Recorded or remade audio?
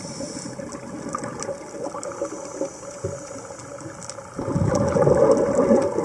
recorded